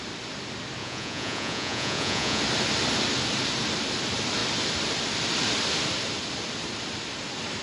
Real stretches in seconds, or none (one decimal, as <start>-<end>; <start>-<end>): 0.0-0.8; 2.4-7.6